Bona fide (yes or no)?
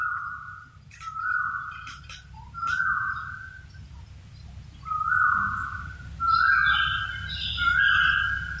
yes